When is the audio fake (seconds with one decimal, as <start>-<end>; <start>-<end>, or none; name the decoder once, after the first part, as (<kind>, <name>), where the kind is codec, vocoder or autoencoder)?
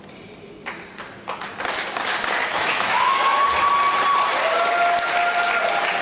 2.4-3.5 (autoencoder, DAC-VAE)